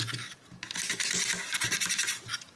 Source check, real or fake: real